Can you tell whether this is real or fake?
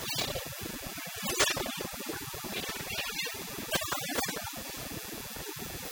real